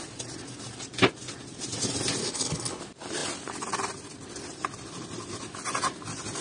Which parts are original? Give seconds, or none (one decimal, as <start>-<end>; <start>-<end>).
0.0-2.2; 2.8-6.4